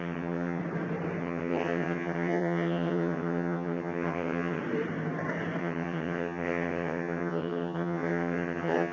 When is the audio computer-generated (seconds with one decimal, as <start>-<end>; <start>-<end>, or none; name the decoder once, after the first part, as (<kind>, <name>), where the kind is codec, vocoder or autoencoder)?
0.0-0.6 (vocoder, HiFi-GAN); 1.2-4.6; 5.6-8.9